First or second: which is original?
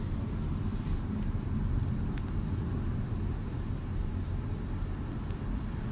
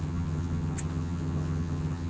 first